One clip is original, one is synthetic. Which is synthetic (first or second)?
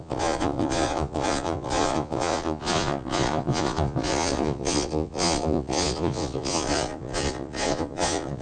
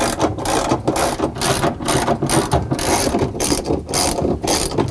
first